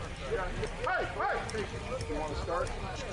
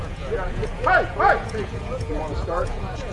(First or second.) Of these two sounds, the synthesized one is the second